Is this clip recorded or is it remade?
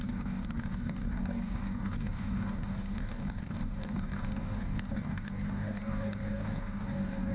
remade